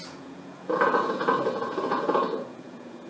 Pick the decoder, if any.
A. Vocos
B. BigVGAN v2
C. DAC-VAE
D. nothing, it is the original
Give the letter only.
A